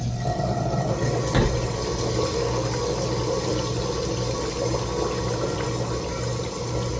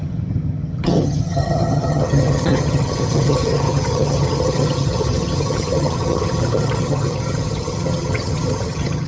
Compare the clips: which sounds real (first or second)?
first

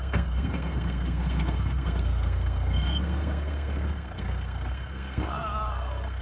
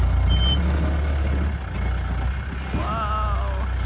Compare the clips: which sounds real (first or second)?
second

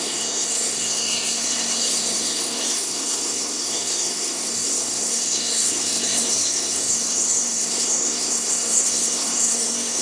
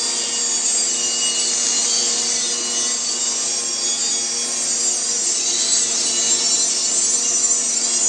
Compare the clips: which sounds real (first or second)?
second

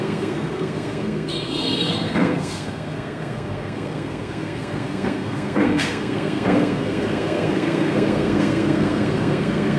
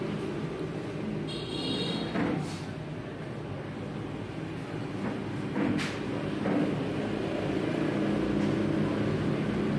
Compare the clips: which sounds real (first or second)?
second